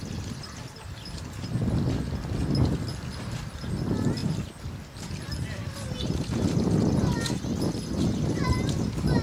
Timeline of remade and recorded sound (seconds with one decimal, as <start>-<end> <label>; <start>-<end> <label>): 0.0-9.2 recorded